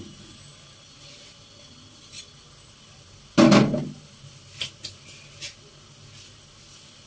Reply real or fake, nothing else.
real